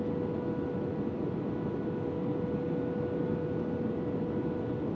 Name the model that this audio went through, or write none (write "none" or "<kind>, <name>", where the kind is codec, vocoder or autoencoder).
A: none